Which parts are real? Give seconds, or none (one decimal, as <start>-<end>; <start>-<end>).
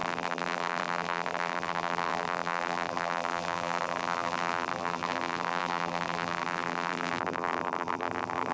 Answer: none